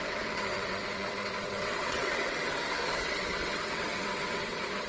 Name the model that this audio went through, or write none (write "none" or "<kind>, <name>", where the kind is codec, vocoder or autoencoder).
vocoder, WaveNeXt